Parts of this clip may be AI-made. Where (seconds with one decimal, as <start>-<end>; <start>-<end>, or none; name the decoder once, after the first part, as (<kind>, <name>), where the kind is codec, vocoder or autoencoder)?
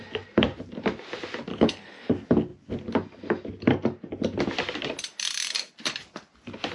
1.5-2.1 (codec, HILCodec)